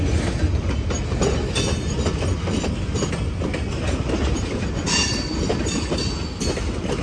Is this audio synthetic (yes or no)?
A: no